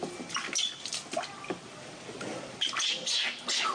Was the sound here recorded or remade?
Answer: recorded